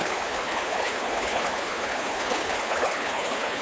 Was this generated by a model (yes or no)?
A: yes